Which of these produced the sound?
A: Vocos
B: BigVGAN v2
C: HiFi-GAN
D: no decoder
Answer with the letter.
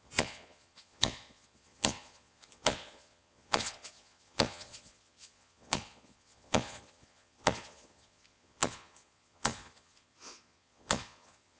A